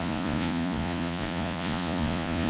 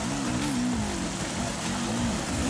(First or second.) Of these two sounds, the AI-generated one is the first